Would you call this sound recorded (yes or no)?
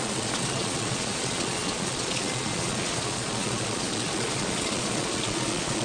no